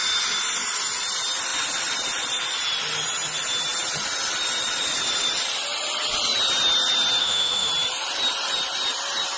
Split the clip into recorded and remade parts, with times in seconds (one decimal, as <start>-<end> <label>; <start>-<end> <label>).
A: 0.0-7.2 recorded; 7.2-7.7 remade; 7.7-9.4 recorded